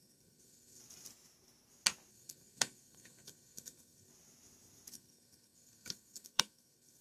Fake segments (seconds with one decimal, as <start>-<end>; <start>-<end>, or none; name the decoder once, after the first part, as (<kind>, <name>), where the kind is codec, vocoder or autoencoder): 0.0-0.8 (codec, SNAC); 2.1-4.1; 4.9-7.0